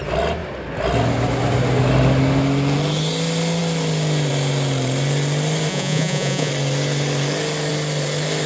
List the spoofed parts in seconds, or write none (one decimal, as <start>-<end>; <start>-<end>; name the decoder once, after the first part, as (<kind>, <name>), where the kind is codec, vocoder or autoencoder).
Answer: 5.7-6.5 (vocoder, Vocos)